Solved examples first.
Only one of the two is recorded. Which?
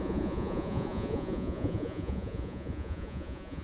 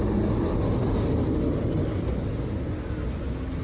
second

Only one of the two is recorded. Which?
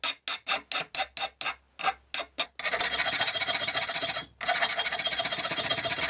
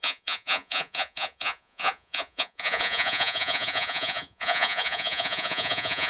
first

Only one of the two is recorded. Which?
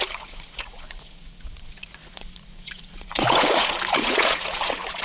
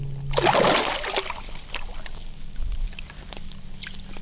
second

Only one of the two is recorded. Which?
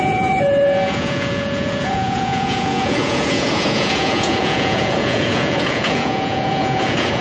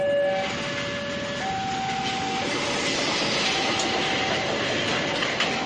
second